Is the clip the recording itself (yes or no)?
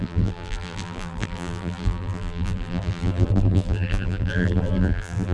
no